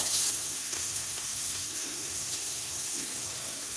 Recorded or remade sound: remade